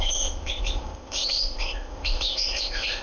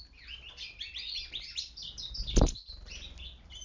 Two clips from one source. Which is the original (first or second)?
second